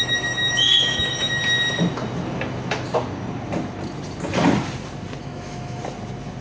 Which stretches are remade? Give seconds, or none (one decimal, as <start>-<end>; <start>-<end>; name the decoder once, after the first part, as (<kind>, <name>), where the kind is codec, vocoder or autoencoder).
0.0-1.4 (autoencoder, DAC-VAE); 5.2-5.8